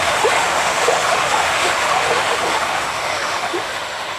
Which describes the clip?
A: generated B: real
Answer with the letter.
A